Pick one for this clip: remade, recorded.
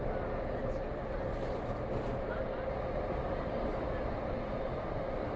recorded